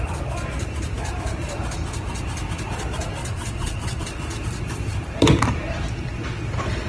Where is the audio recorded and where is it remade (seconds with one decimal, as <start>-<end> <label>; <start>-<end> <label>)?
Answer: 0.0-3.2 recorded; 3.2-4.0 remade; 4.0-6.9 recorded

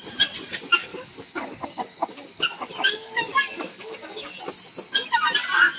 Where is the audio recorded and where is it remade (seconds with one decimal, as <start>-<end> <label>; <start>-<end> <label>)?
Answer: 0.0-0.9 recorded; 0.9-4.4 remade; 4.4-5.8 recorded

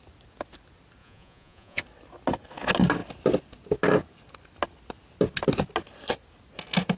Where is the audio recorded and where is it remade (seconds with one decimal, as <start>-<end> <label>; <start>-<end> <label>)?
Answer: 0.0-1.0 recorded; 1.0-1.8 remade; 1.8-7.0 recorded

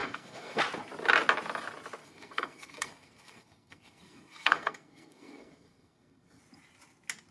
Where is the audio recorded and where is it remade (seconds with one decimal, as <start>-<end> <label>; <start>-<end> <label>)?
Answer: 0.0-0.6 remade; 0.6-2.0 recorded; 2.0-6.4 remade; 6.4-7.3 recorded

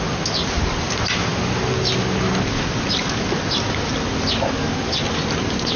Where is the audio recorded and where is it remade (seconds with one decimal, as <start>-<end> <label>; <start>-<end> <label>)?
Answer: 0.0-5.8 recorded

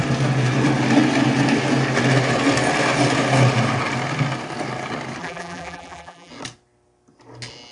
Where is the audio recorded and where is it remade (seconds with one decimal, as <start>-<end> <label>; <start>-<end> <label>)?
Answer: 0.0-5.2 recorded; 5.2-6.3 remade; 6.3-7.7 recorded